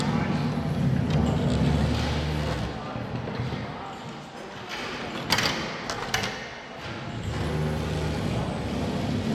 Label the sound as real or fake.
real